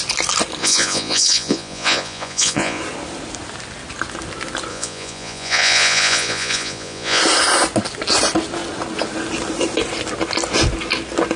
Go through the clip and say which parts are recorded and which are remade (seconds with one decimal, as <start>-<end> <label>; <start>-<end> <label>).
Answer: 0.0-0.6 recorded; 0.6-2.8 remade; 2.8-4.7 recorded; 4.7-7.2 remade; 7.2-11.4 recorded